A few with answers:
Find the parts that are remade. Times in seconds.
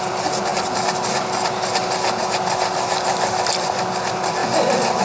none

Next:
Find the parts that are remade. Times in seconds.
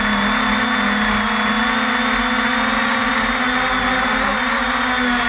none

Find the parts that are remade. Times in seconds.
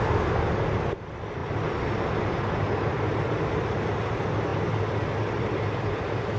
none